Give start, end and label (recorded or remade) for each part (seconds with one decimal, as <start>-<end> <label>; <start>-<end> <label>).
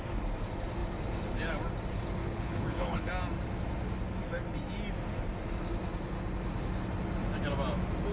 0.0-2.2 recorded; 2.2-3.1 remade; 3.1-8.1 recorded